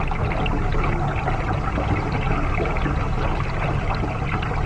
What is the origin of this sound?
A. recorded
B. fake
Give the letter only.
A